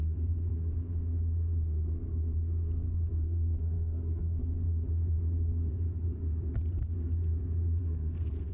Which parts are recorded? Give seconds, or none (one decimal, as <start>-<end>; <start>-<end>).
0.5-3.1; 4.4-7.8